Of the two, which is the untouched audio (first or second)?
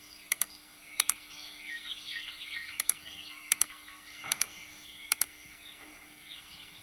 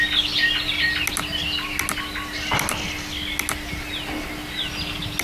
second